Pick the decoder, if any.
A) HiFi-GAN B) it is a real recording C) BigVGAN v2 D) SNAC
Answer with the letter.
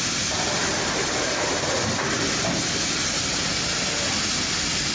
B